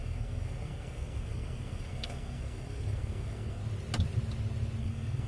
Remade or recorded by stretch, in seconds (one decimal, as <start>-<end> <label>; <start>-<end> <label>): 0.0-3.6 remade; 3.6-4.8 recorded; 4.8-5.3 remade